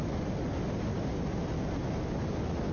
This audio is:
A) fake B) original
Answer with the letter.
B